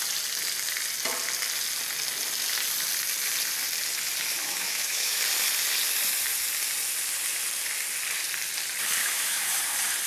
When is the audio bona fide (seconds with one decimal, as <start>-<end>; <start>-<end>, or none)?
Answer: 0.0-4.4; 5.2-9.0; 9.6-10.1

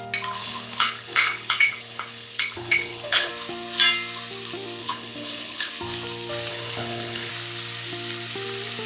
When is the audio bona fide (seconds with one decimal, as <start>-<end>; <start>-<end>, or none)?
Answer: 0.0-0.4; 3.3-4.8; 5.7-6.5; 7.3-8.9

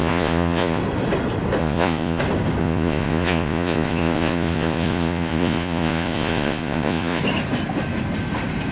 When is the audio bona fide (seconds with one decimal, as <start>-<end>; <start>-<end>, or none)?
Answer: 0.8-1.6; 2.2-2.6; 7.2-8.7

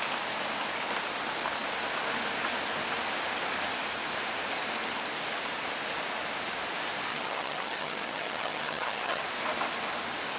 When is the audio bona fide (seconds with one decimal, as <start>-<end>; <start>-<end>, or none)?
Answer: 0.0-7.1; 9.2-10.4

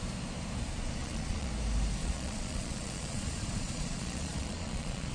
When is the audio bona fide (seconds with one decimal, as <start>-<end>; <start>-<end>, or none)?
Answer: 0.0-1.0; 1.5-2.0

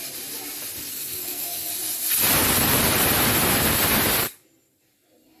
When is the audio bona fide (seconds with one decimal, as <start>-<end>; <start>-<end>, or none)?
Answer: 0.0-0.9; 1.7-5.4

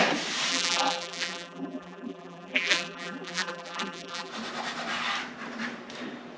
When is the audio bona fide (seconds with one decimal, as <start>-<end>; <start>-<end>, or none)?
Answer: 0.0-0.5; 4.3-6.4